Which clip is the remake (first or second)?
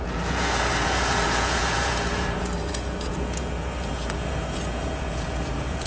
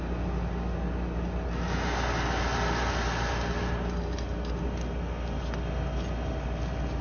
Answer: first